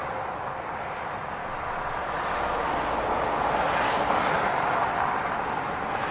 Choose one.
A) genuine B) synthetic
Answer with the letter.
A